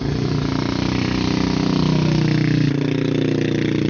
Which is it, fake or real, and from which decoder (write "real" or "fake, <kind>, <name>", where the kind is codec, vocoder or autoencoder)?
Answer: real